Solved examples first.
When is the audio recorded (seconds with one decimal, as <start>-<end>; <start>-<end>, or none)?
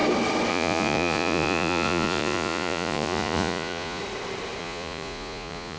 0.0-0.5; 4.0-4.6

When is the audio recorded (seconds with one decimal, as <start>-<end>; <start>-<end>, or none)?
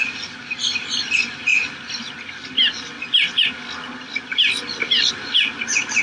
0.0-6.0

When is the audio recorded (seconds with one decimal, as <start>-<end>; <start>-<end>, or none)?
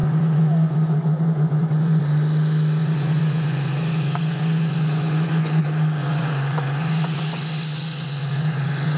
2.0-2.8; 5.6-6.0